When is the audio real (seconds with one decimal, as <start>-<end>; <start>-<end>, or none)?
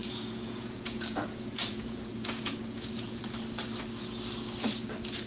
3.2-5.3